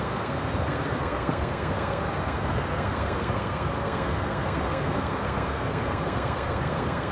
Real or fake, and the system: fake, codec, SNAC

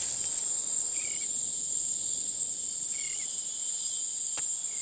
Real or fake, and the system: fake, vocoder, BigVGAN v2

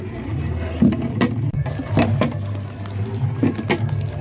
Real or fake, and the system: real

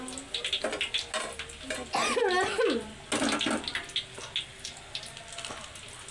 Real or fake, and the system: real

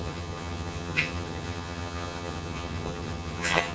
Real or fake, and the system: fake, vocoder, HiFi-GAN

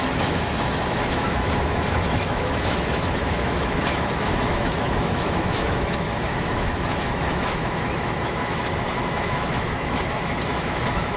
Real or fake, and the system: fake, autoencoder, DAC-VAE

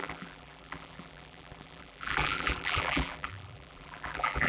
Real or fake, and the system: fake, vocoder, BigVGAN v2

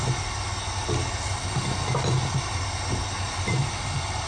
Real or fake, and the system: real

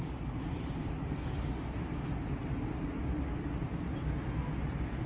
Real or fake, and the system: real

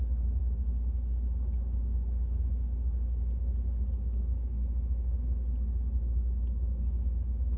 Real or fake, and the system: real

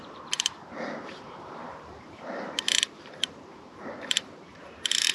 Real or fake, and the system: fake, vocoder, BigVGAN v2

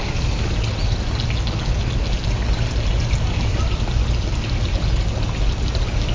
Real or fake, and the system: real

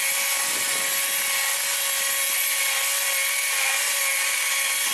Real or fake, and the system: real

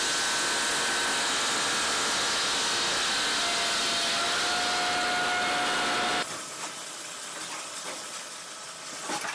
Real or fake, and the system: real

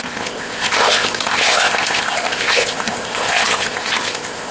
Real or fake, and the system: fake, codec, ZipCodec